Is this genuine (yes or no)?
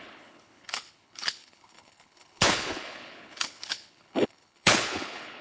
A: no